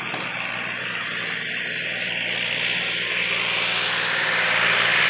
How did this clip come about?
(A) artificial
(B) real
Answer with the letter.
B